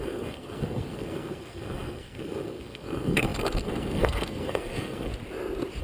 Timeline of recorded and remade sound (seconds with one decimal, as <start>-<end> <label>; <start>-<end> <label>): 0.0-5.1 remade; 5.1-5.8 recorded